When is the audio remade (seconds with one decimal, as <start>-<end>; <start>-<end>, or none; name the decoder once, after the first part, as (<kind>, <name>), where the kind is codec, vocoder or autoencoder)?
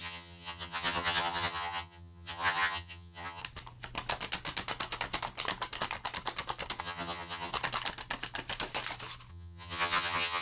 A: 0.0-3.4 (vocoder, HiFi-GAN); 6.8-7.5; 9.3-10.4